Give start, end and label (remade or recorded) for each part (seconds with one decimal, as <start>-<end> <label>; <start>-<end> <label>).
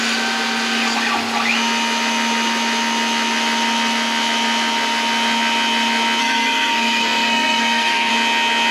0.0-6.2 recorded; 6.2-8.1 remade; 8.1-8.7 recorded